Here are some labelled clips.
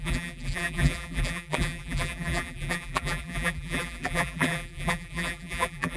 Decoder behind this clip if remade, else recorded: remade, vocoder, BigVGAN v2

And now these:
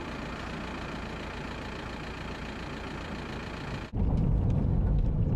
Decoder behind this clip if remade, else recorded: recorded